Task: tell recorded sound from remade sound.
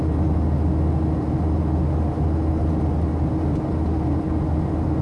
recorded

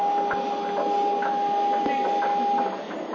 recorded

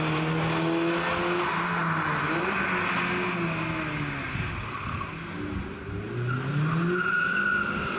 recorded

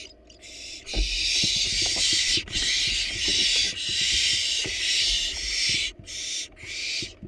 recorded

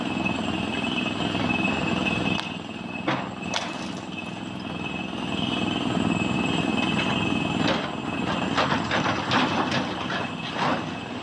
recorded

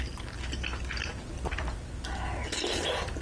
recorded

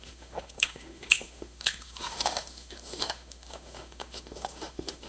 remade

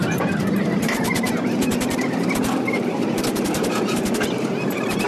remade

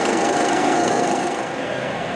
remade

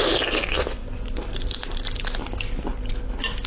recorded